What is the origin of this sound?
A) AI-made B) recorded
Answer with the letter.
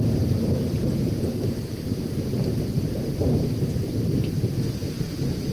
A